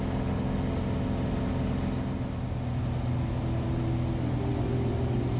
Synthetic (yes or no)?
no